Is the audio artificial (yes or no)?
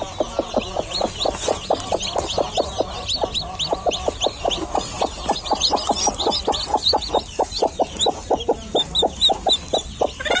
no